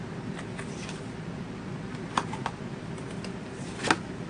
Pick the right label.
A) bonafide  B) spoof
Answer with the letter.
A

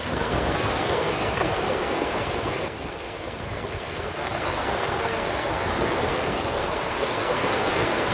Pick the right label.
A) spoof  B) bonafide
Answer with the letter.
A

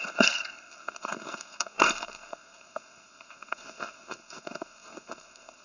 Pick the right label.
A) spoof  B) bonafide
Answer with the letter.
A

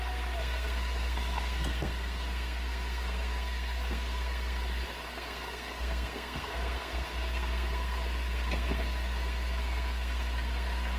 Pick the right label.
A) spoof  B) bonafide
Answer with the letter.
A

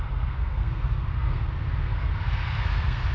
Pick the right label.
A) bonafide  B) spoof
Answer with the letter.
B